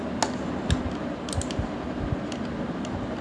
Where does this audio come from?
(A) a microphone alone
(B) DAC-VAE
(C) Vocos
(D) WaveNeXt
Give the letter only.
A